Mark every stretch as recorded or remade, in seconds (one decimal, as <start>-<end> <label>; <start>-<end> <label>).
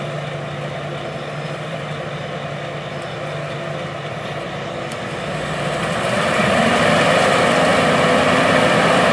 0.0-9.1 recorded